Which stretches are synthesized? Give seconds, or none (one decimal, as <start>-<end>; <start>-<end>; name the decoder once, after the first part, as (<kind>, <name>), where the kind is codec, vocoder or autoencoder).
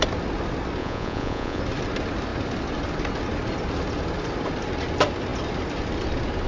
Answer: 0.8-1.6 (vocoder, Vocos)